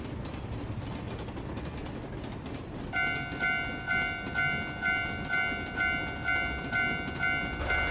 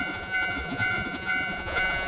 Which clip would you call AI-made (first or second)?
second